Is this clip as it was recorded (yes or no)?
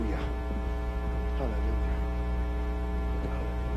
yes